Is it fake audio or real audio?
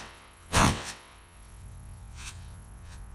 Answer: fake